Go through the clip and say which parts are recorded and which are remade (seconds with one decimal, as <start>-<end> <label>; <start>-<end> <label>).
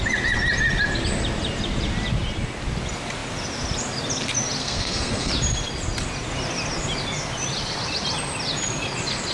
0.0-4.6 recorded; 4.6-5.3 remade; 5.3-9.3 recorded